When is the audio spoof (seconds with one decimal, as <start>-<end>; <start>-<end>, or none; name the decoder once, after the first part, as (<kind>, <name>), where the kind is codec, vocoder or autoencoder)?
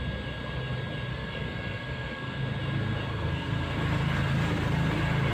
1.1-2.4 (codec, SNAC); 3.1-3.7